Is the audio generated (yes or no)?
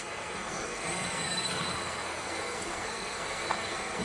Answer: yes